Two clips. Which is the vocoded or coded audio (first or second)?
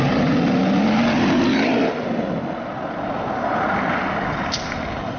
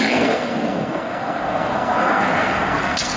second